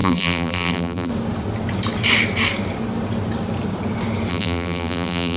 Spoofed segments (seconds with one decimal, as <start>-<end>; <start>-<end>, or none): 0.0-1.1; 4.3-5.4